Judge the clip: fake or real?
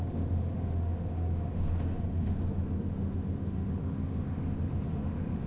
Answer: fake